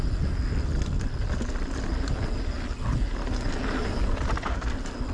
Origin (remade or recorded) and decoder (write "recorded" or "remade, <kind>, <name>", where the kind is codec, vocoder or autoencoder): recorded